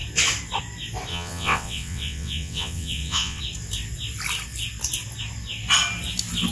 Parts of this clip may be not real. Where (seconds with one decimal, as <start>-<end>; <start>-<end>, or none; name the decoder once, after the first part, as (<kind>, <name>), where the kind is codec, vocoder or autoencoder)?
1.1-3.4 (vocoder, WaveNeXt)